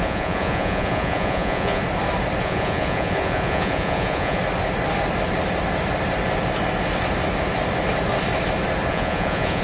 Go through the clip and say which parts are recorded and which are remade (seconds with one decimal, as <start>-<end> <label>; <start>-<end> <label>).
0.0-1.8 remade; 1.8-2.4 recorded; 2.4-4.4 remade; 4.4-8.9 recorded; 8.9-9.6 remade